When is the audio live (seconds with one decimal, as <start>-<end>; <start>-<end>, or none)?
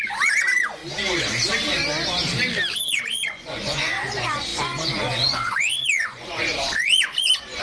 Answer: 0.8-2.7